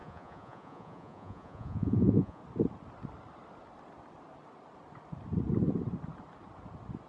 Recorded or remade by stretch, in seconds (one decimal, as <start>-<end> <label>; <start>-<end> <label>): 0.0-2.4 remade; 2.4-7.1 recorded